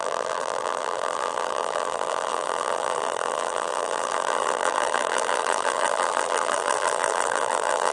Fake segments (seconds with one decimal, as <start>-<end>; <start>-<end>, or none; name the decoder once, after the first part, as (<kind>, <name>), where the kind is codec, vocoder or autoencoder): 0.0-7.9 (vocoder, BigVGAN v2)